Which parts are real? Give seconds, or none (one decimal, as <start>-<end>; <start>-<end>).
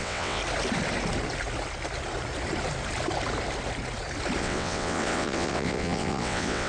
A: 0.4-4.4